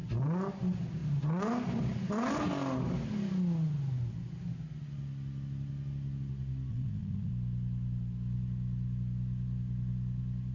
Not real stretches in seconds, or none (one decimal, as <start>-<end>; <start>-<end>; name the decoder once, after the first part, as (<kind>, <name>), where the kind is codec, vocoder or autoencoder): 6.7-7.3 (vocoder, Vocos)